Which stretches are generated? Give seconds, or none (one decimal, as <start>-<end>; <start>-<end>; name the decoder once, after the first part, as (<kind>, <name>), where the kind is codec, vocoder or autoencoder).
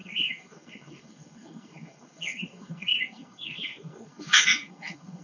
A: 0.0-5.2 (codec, SNAC)